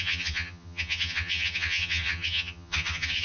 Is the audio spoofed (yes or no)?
yes